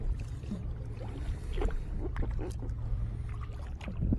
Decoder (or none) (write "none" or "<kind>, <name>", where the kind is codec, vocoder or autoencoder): none